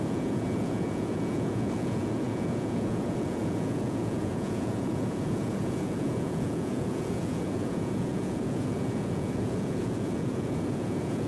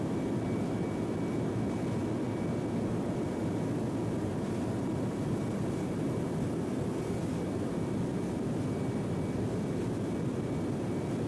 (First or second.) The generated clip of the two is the first